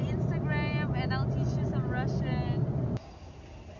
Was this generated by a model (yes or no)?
no